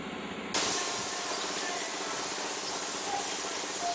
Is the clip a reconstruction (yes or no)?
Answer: no